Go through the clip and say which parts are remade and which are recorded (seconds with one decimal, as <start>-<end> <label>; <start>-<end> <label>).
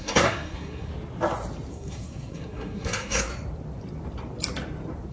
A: 0.0-0.9 remade; 0.9-1.7 recorded; 1.7-3.3 remade; 3.3-5.1 recorded